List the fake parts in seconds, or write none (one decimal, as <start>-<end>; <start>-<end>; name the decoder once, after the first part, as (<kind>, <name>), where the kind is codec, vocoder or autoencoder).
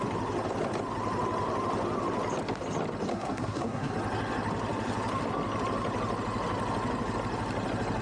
3.1-3.9 (codec, SNAC)